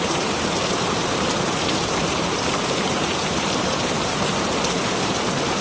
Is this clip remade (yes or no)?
yes